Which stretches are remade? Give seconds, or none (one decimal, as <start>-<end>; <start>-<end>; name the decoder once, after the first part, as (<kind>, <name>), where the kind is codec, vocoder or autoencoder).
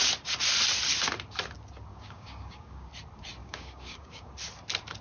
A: 1.9-2.9 (codec, DAC); 3.4-4.3